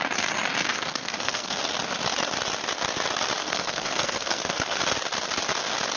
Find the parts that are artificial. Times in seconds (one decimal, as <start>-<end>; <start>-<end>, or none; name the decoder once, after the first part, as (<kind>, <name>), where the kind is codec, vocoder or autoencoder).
0.7-1.6 (codec, SNAC); 3.4-4.8